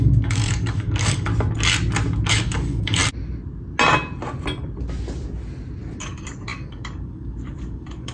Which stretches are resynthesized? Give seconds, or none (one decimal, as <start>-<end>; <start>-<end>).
0.0-1.3; 2.3-3.0; 6.0-8.1